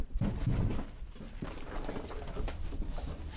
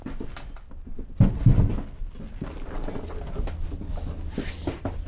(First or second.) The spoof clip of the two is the first